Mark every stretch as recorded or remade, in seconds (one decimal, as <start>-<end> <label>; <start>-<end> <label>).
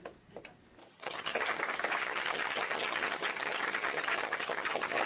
0.0-0.8 recorded; 0.8-1.6 remade; 1.6-2.0 recorded; 2.0-5.1 remade